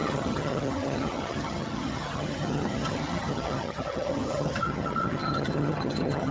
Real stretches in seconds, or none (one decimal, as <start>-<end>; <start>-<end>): none